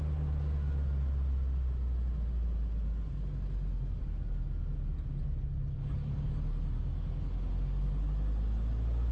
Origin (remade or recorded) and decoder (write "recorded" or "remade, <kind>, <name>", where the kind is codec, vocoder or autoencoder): recorded